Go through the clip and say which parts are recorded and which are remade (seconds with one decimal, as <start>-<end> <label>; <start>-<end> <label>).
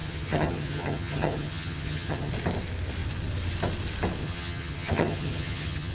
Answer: 0.0-2.3 remade; 2.3-4.2 recorded; 4.2-5.9 remade